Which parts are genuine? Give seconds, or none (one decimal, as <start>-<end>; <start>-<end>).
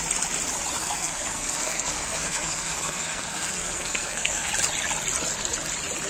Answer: 0.0-0.8; 4.5-6.1